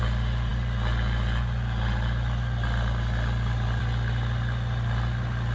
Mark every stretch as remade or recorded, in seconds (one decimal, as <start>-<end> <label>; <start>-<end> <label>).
0.0-5.5 recorded

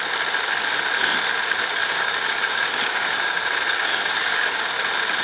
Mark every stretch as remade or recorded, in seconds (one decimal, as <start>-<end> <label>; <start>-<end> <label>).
0.0-1.8 recorded; 1.8-3.5 remade; 3.5-3.9 recorded; 3.9-4.6 remade; 4.6-5.2 recorded